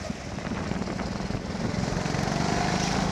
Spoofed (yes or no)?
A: no